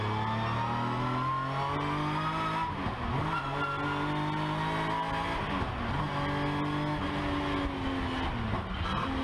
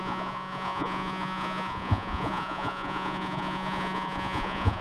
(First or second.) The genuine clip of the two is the first